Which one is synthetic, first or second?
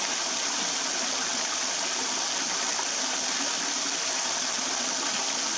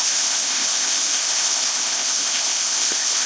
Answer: second